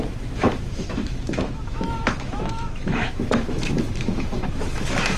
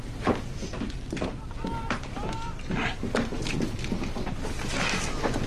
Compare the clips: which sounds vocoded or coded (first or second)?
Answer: first